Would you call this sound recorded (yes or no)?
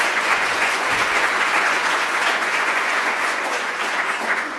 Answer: no